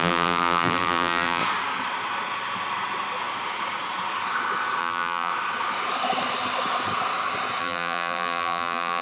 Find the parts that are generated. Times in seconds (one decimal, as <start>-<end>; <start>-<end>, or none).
0.0-1.4; 4.8-5.3; 7.6-9.0